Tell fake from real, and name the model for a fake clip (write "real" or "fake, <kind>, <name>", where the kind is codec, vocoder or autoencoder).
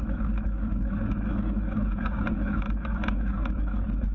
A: fake, autoencoder, DAC-VAE